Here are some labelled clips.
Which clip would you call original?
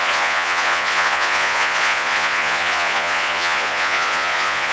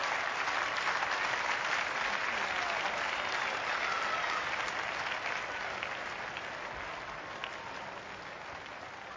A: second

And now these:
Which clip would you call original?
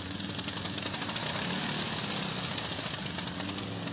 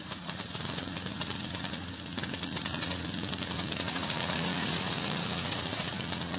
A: first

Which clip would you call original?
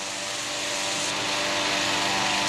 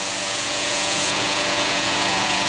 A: first